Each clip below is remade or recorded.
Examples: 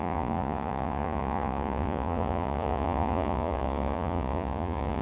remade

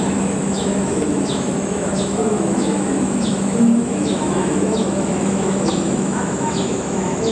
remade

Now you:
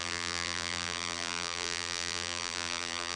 remade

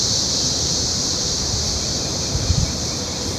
remade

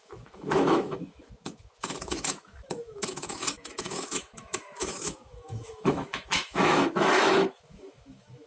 remade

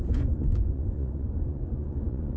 remade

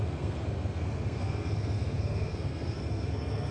remade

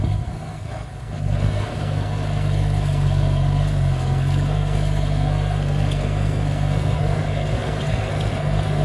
remade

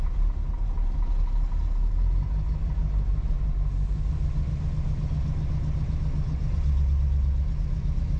recorded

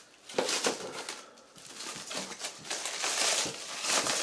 recorded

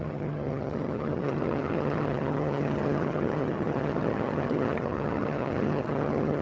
remade